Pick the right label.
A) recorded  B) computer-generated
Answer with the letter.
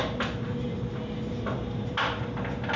A